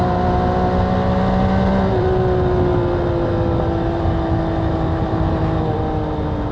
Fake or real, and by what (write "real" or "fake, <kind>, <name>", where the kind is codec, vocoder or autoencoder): real